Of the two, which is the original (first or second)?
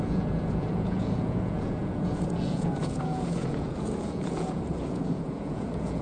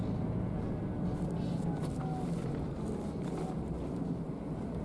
second